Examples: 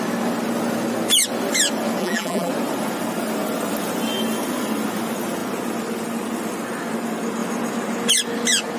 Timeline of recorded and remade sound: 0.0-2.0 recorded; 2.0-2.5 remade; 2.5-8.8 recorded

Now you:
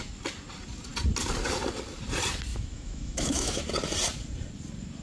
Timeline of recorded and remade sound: 0.0-2.5 recorded; 2.5-3.6 remade; 3.6-5.0 recorded

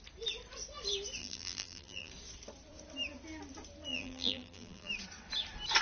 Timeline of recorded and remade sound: 0.0-1.2 recorded; 1.2-2.1 remade; 2.1-3.9 recorded; 3.9-4.9 remade; 4.9-5.8 recorded

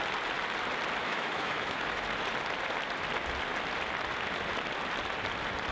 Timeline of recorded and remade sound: 0.0-1.0 recorded; 1.0-2.0 remade; 2.0-5.7 recorded

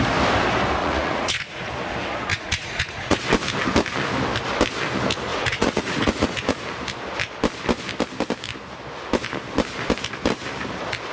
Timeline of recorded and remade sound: 0.0-0.8 recorded; 0.8-1.7 remade; 1.7-2.3 recorded; 2.3-3.2 remade; 3.2-5.3 recorded; 5.3-6.6 remade; 6.6-11.1 recorded

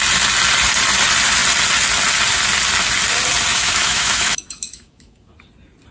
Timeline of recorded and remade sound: 0.0-3.5 recorded; 3.5-5.3 remade; 5.3-5.9 recorded